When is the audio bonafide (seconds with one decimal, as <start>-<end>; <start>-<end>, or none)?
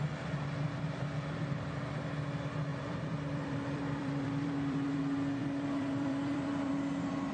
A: 0.0-2.7; 5.0-5.4; 6.7-7.3